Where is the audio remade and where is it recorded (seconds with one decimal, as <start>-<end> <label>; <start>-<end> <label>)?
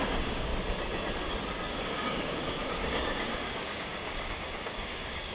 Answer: 0.0-0.5 remade; 0.5-1.7 recorded; 1.7-5.3 remade